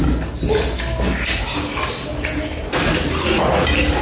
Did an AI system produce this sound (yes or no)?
no